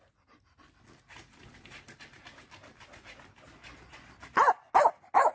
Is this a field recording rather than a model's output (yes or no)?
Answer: yes